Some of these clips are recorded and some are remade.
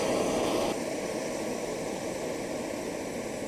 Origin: recorded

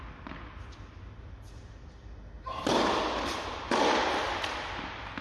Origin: recorded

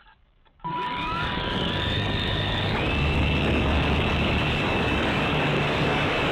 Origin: remade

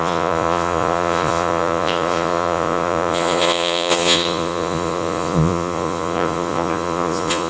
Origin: remade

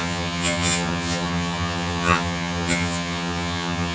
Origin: remade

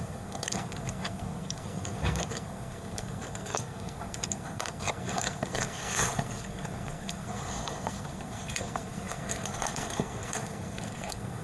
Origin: remade